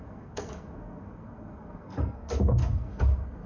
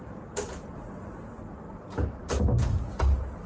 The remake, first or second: first